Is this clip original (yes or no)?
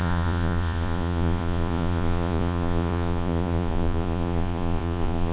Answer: no